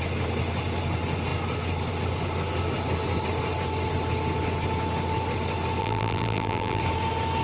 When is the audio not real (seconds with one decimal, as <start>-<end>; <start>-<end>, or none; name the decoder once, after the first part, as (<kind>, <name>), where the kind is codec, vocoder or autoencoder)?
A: 5.8-6.8 (vocoder, BigVGAN v2)